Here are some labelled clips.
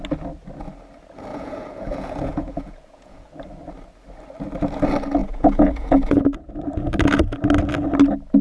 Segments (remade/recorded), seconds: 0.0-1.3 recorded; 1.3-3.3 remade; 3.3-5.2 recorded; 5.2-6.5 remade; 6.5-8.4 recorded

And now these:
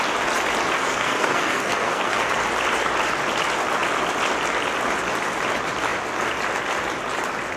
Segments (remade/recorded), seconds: 0.0-0.8 recorded; 0.8-2.3 remade; 2.3-7.6 recorded